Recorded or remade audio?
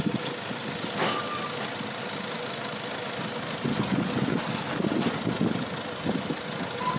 recorded